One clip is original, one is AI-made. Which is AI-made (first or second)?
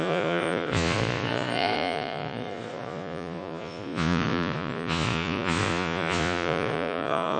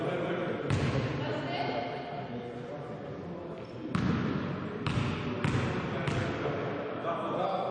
first